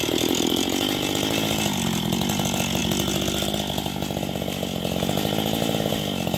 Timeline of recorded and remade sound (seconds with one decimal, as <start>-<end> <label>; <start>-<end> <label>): 0.0-6.4 recorded